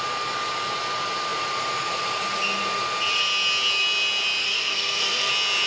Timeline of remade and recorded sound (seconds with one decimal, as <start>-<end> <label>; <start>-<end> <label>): 0.0-4.4 recorded; 4.4-5.3 remade; 5.3-5.7 recorded